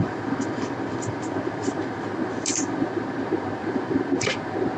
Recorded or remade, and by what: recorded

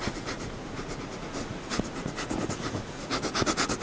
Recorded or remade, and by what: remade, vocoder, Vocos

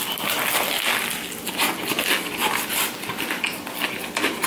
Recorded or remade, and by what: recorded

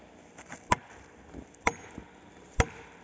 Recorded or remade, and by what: recorded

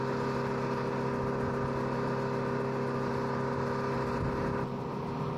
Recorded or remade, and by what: recorded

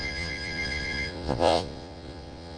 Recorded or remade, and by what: remade, vocoder, Vocos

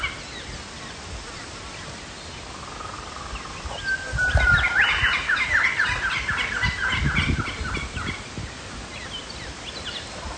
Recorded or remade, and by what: recorded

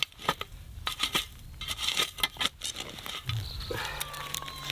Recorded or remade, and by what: recorded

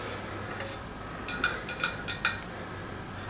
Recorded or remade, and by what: recorded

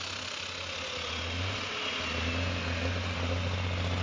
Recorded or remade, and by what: recorded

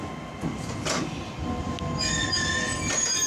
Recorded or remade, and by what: recorded